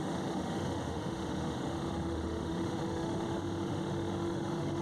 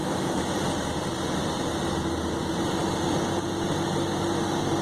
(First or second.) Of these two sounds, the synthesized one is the first